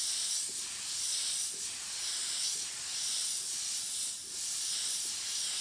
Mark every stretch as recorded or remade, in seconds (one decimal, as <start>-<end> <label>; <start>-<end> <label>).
0.0-5.6 recorded